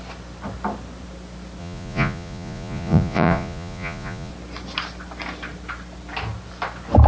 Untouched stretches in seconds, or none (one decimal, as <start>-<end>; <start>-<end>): 0.0-1.6; 4.3-7.1